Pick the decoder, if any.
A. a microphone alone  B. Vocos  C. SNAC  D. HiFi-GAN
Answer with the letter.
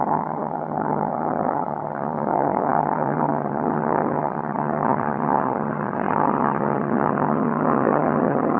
D